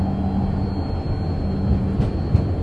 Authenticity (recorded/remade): recorded